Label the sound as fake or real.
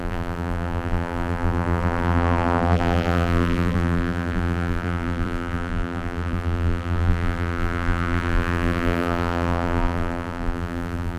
fake